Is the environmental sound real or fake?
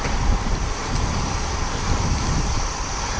fake